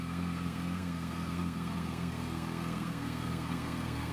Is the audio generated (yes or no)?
yes